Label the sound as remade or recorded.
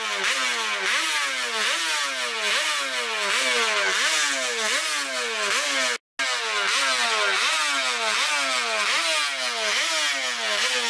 recorded